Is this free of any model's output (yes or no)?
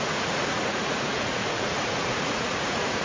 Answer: no